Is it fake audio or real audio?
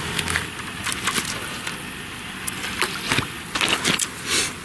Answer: real